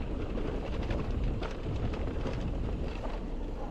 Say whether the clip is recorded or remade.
remade